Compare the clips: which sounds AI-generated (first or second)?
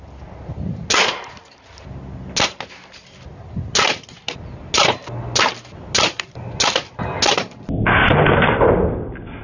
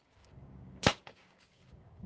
second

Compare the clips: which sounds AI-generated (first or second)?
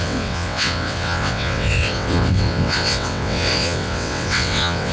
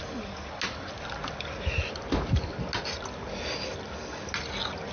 first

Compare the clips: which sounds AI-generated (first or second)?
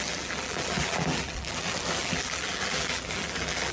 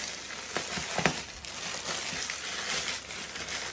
first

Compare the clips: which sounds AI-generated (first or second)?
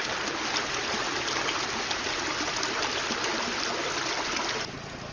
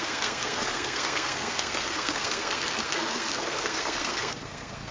second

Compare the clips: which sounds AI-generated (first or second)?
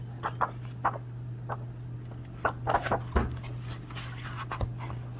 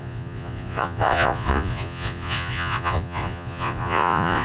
second